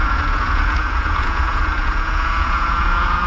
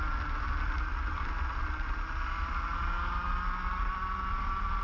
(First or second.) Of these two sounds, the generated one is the first